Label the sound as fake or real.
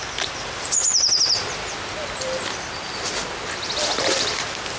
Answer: real